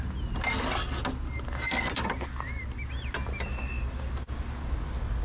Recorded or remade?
recorded